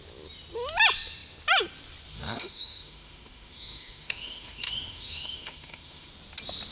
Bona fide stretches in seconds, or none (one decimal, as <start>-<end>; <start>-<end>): 0.0-2.1; 6.1-6.7